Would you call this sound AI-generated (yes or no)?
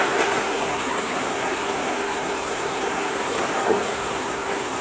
yes